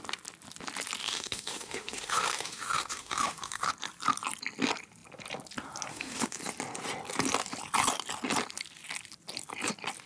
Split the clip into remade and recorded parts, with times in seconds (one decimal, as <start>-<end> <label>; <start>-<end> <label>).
0.0-1.0 recorded; 1.0-3.7 remade; 3.7-5.9 recorded; 5.9-6.4 remade; 6.4-10.1 recorded